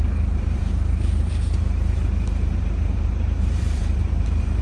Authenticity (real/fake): fake